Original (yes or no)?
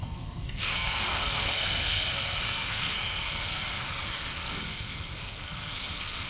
no